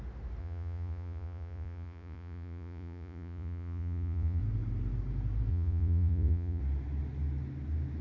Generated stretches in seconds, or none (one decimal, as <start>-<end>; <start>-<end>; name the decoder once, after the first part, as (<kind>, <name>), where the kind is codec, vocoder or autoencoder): 0.4-4.4 (vocoder, Vocos); 5.5-6.6